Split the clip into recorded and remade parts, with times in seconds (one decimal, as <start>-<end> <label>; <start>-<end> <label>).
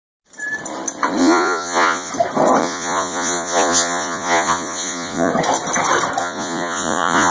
0.0-1.2 recorded; 1.2-2.1 remade; 2.1-2.6 recorded; 2.6-5.3 remade; 5.3-6.2 recorded; 6.2-7.3 remade